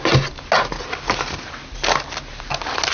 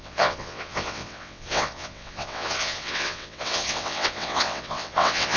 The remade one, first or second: second